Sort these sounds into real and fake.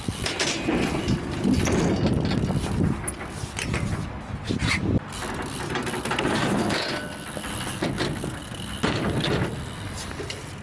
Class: real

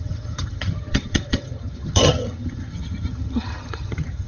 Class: fake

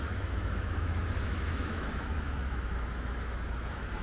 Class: fake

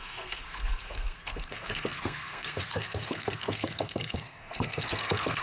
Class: fake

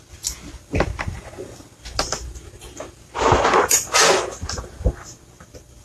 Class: real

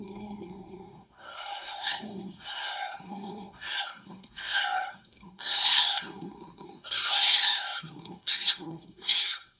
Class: fake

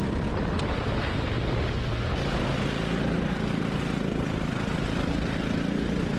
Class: real